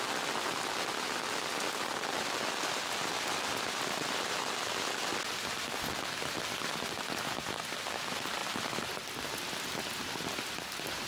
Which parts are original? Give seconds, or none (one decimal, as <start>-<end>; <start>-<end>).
0.0-11.1